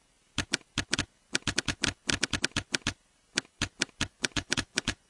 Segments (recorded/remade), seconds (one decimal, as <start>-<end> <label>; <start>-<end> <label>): 0.0-4.1 recorded; 4.1-5.1 remade